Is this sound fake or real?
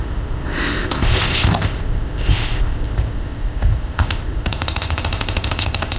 fake